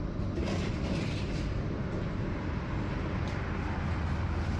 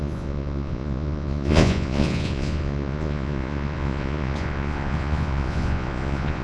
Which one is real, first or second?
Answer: first